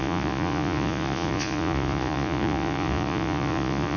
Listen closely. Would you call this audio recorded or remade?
remade